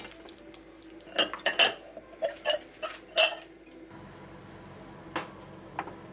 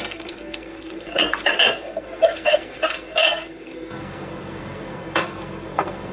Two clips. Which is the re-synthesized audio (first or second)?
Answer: second